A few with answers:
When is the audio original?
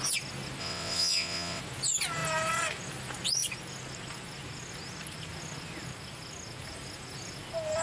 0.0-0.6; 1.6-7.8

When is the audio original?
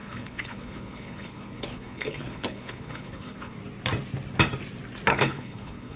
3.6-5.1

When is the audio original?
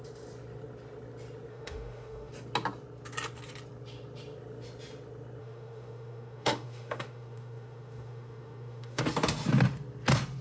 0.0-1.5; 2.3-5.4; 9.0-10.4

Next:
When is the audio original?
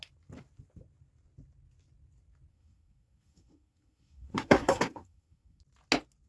0.0-2.5; 5.6-6.3